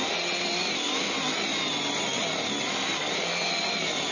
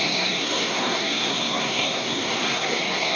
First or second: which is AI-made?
second